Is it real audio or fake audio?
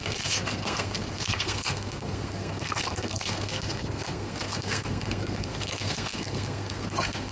fake